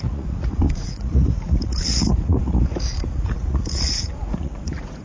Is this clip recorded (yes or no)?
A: no